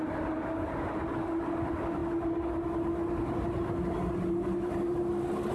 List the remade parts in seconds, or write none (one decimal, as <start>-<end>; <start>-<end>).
none